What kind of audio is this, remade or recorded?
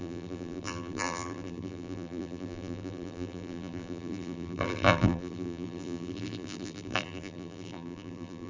remade